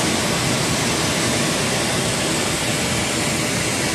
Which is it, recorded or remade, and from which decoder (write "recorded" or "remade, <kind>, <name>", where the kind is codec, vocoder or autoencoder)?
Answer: recorded